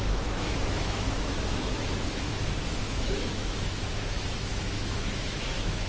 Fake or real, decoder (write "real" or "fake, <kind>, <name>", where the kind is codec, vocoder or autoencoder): fake, autoencoder, DAC-VAE